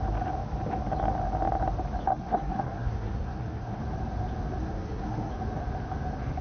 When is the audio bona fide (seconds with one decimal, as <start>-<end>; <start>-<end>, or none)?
0.0-2.1; 3.8-4.6; 5.3-6.4